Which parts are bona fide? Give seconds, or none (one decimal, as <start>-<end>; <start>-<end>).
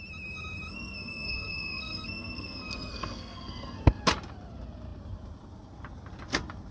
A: 0.0-0.7; 3.8-6.7